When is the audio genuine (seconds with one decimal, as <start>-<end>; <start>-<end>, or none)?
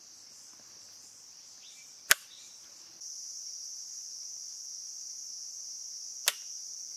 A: 0.0-7.0